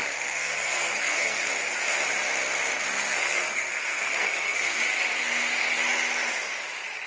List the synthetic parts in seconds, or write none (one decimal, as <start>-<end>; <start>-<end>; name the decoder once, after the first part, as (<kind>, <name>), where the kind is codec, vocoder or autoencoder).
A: 0.0-1.5 (codec, SNAC); 2.9-4.8

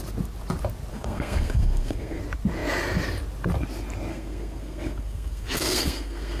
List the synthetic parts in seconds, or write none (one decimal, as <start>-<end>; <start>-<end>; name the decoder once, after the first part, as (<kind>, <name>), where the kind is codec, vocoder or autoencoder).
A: 0.9-2.2 (codec, SNAC); 4.1-6.4

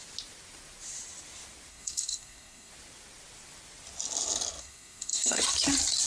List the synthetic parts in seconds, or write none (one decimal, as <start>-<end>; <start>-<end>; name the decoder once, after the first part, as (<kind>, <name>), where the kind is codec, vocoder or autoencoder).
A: 1.7-2.7 (codec, SNAC); 4.6-5.4

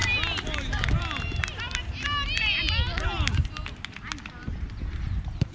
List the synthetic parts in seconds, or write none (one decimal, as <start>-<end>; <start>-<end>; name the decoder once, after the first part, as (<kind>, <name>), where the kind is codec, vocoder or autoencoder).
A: none

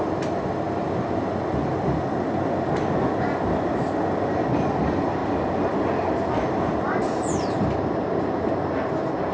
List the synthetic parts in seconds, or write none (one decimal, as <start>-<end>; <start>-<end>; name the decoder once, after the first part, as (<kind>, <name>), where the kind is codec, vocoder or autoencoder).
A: none

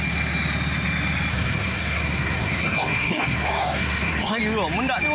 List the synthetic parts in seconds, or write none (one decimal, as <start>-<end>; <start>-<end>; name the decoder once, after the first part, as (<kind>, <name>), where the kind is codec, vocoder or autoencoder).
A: 1.3-4.4 (codec, SNAC)